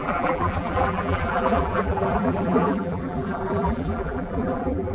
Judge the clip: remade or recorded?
remade